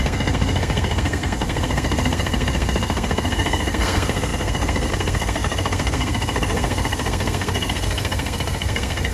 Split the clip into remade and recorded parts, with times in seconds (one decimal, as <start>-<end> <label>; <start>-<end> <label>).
0.0-9.1 remade